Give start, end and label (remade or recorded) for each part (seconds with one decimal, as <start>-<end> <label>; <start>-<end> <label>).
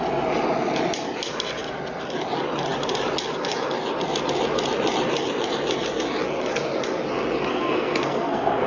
0.0-7.5 recorded; 7.5-8.7 remade